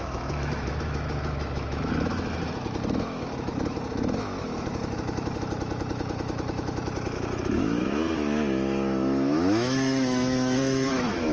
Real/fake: fake